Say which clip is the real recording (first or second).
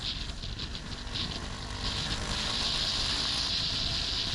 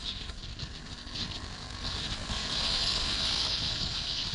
first